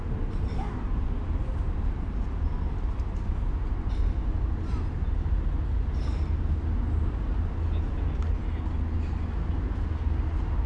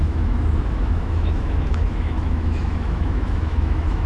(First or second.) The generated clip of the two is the second